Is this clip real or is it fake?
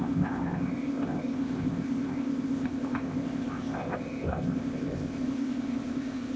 fake